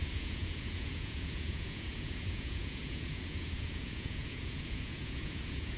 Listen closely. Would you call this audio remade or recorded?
remade